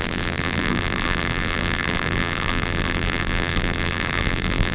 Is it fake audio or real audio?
fake